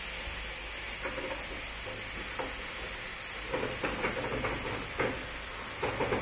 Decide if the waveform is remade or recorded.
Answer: recorded